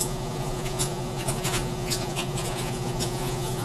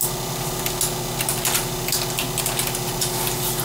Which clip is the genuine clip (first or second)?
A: second